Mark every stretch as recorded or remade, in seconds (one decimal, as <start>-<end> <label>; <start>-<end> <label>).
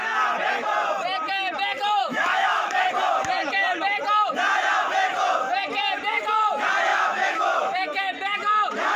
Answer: 0.0-2.0 recorded; 2.0-2.8 remade; 2.8-6.9 recorded; 6.9-8.0 remade; 8.0-9.0 recorded